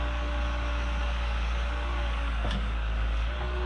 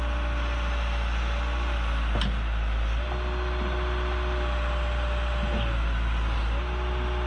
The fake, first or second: first